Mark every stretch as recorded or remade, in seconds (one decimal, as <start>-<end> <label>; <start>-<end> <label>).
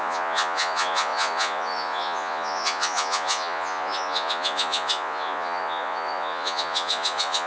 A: 0.0-7.5 remade